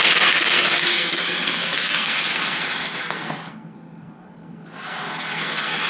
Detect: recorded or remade remade